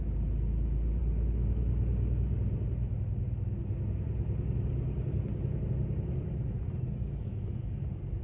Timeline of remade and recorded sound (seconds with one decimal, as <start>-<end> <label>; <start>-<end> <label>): 0.0-8.2 recorded